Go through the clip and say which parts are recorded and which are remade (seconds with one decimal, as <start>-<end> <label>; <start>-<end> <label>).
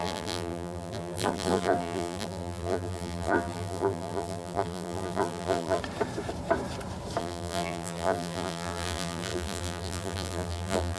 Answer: 0.0-5.8 remade; 5.8-7.2 recorded; 7.2-11.0 remade